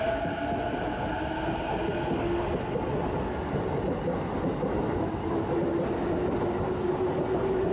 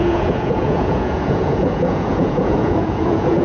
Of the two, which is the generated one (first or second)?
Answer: second